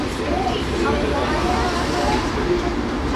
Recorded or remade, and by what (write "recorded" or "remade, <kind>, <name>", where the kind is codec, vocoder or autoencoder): recorded